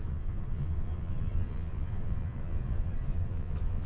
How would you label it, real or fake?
fake